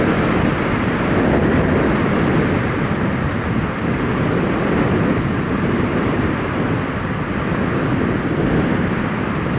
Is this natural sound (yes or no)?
yes